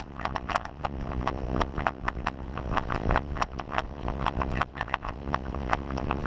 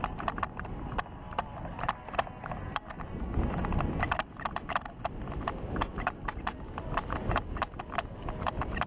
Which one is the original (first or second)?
second